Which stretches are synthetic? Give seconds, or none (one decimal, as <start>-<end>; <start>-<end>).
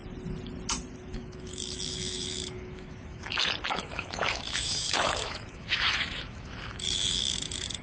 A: 1.0-7.8